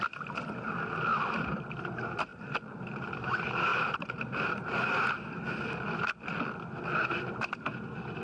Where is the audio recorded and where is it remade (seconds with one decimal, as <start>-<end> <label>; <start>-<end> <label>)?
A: 0.0-1.1 recorded; 1.1-1.8 remade; 1.8-3.7 recorded; 3.7-6.2 remade; 6.2-8.2 recorded